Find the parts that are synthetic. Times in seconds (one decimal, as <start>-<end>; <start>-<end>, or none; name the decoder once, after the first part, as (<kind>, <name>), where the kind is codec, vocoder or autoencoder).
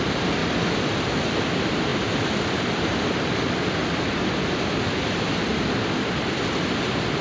0.0-7.2 (vocoder, BigVGAN v2)